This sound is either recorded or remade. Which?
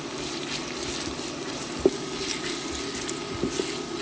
recorded